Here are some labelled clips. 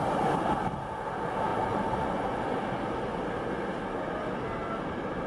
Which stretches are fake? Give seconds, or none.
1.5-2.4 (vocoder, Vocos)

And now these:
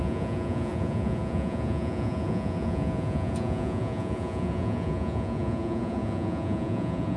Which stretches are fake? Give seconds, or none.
0.0-7.2 (vocoder, Vocos)

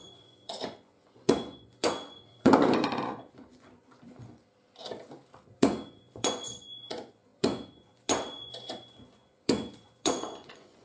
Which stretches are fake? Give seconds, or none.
0.0-4.4 (vocoder, Vocos); 5.4-10.8

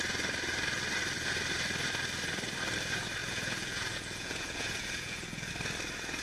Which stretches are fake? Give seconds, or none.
3.2-5.5 (vocoder, Vocos)

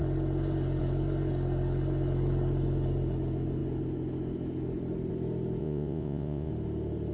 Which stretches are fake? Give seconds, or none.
5.6-6.5 (vocoder, Vocos)

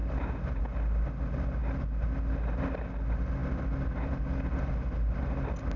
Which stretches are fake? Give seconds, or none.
none